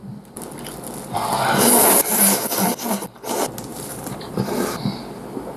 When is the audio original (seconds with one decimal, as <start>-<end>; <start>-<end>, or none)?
0.0-1.8; 2.5-3.7; 4.4-5.6